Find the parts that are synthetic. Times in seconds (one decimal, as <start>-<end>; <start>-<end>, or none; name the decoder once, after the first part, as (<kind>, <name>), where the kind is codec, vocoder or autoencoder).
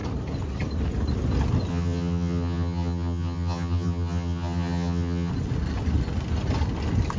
1.7-5.3 (vocoder, HiFi-GAN)